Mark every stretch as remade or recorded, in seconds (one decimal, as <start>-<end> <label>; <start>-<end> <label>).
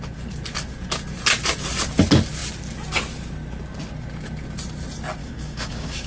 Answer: 0.0-5.2 recorded; 5.2-6.1 remade